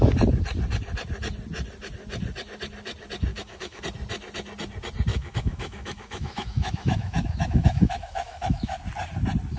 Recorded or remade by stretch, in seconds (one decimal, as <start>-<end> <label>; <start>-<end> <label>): 0.0-3.3 recorded; 3.3-3.8 remade; 3.8-5.1 recorded; 5.1-8.8 remade; 8.8-9.6 recorded